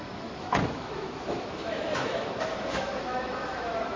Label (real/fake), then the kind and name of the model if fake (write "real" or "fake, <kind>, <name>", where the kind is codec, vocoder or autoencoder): fake, autoencoder, DAC-VAE